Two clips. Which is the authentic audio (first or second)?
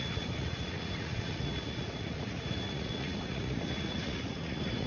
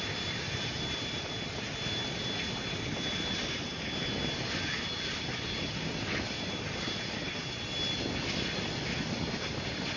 second